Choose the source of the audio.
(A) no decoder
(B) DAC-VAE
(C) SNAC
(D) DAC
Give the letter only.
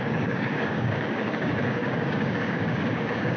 D